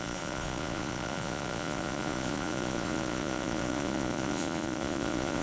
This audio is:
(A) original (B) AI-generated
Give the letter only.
B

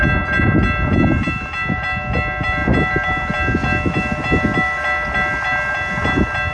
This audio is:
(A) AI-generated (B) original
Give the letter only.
B